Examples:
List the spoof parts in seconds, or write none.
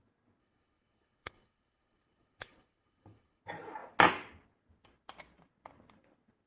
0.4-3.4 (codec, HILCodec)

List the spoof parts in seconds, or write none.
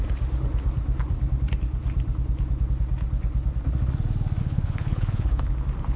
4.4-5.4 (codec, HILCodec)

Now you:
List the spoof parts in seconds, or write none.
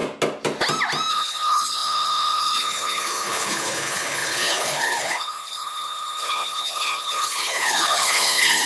1.1-8.7 (codec, HILCodec)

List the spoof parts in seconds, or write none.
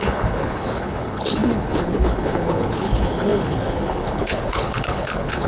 0.0-5.5 (codec, HILCodec)